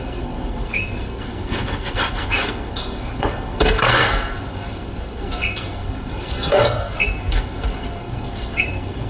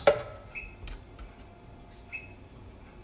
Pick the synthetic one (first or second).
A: first